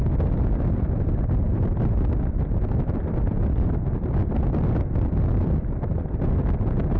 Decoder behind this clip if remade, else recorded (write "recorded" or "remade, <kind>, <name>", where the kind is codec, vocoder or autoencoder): recorded